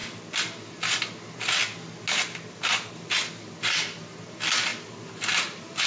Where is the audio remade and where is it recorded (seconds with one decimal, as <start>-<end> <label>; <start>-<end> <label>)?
0.0-5.9 recorded